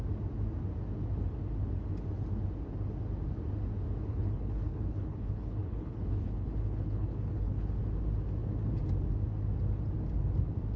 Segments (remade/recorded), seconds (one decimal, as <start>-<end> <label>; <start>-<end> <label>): 0.0-4.1 recorded; 4.1-7.8 remade; 7.8-10.8 recorded